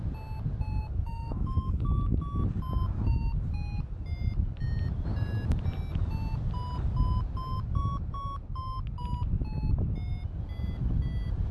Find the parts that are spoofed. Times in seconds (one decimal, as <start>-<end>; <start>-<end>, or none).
0.8-2.0